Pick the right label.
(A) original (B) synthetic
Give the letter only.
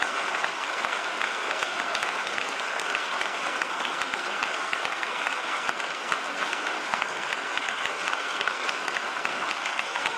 B